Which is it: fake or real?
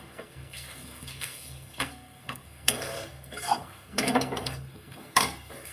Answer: fake